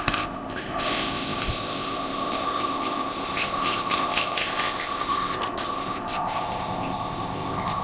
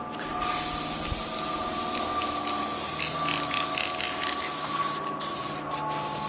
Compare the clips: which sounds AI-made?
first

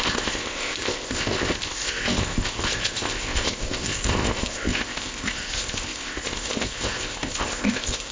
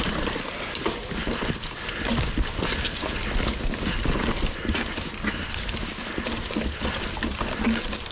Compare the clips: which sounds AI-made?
first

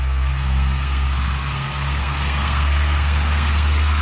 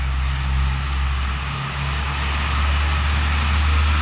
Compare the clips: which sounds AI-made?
first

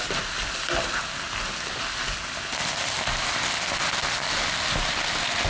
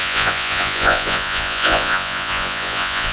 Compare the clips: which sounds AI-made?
second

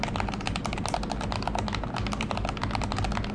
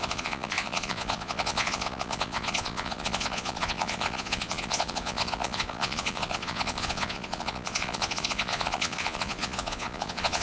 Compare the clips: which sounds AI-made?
second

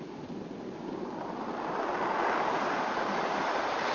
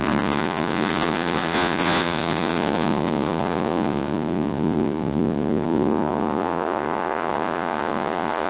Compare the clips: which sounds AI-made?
second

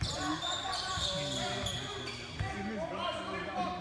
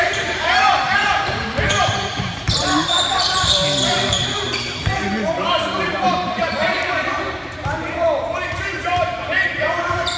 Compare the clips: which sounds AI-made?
second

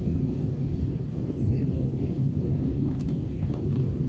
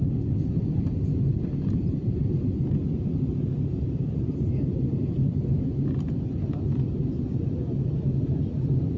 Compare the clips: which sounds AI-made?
first